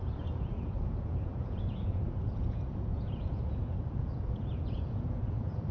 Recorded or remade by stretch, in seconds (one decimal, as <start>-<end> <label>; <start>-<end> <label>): 0.0-5.7 remade